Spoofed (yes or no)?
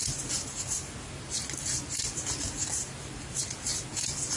no